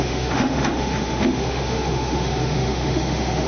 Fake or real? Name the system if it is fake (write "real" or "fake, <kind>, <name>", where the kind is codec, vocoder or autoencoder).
fake, autoencoder, DAC-VAE